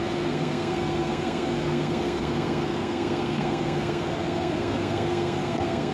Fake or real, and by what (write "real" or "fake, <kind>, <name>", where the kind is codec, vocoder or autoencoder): fake, codec, SNAC